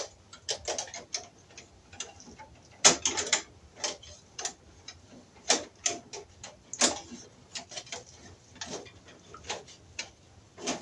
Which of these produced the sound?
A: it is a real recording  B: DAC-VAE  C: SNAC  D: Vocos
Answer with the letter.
A